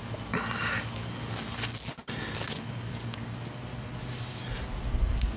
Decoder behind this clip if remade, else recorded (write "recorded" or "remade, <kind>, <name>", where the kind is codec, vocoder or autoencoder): recorded